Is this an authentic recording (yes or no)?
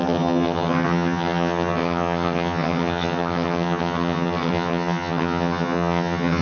no